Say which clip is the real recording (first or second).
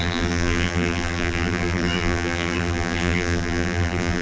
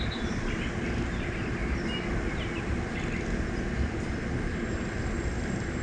second